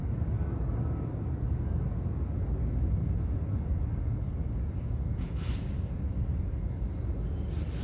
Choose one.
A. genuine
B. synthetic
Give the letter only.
A